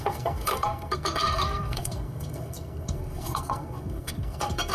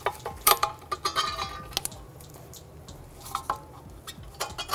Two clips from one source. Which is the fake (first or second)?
first